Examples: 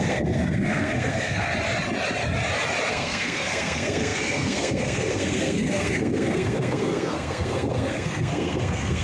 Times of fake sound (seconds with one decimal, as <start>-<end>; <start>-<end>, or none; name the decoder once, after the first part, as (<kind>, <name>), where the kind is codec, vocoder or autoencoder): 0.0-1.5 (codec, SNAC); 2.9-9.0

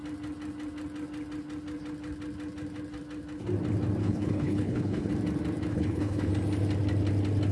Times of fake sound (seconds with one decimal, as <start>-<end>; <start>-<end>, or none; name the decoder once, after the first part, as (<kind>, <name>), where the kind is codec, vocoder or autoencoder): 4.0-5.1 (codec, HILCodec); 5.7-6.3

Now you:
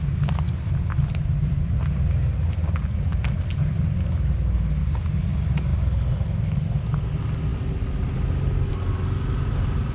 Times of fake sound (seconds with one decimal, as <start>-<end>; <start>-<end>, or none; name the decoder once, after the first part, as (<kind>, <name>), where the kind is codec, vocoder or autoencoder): none

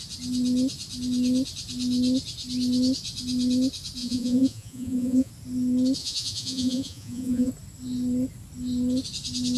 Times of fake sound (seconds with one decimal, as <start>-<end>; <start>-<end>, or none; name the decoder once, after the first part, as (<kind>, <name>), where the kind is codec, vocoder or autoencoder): 4.0-5.3 (vocoder, Vocos); 6.0-7.5

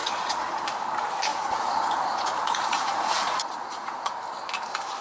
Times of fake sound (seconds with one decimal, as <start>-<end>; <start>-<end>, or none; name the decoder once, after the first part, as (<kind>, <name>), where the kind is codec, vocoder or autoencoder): 0.0-0.6 (vocoder, Vocos); 1.3-4.1